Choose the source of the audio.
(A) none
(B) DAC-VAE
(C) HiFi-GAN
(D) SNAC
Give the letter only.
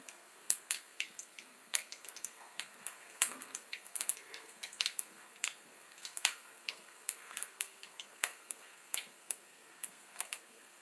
D